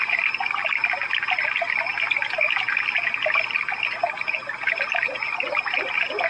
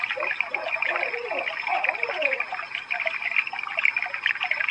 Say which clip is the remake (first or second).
second